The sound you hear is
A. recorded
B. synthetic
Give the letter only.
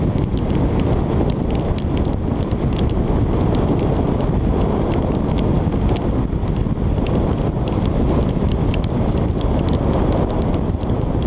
A